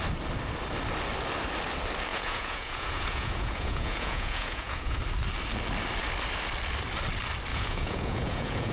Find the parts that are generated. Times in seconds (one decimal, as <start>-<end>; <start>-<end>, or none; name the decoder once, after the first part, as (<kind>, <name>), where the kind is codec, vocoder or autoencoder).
2.1-5.0 (vocoder, Vocos); 7.5-8.7